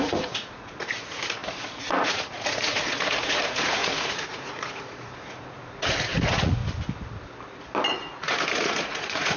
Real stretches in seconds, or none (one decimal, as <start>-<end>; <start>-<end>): 6.6-7.9